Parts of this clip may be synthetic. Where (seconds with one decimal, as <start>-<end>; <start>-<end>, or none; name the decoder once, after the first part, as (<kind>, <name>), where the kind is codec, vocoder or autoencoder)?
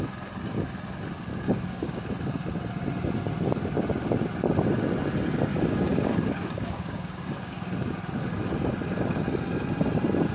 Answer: 1.3-2.0 (codec, DAC); 5.5-7.9